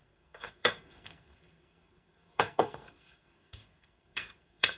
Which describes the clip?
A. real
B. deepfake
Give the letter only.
B